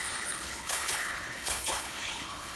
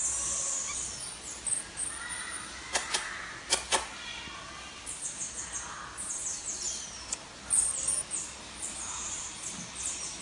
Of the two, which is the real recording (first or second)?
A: second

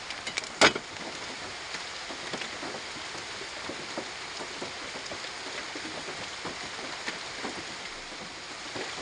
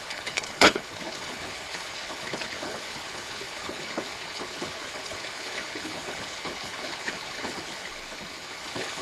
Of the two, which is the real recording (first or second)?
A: first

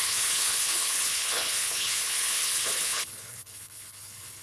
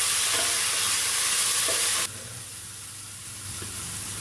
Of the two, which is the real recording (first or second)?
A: second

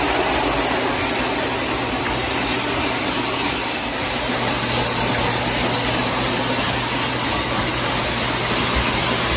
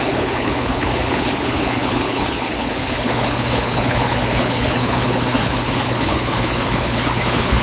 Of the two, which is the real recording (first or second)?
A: first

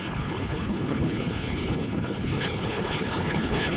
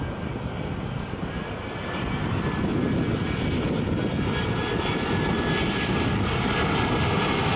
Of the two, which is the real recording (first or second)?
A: second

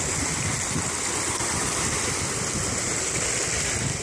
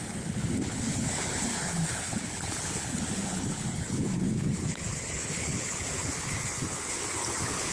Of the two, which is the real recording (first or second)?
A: first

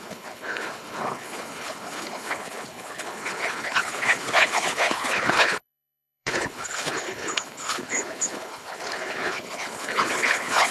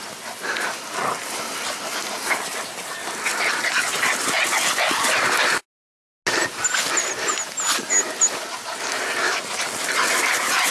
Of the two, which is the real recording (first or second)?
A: second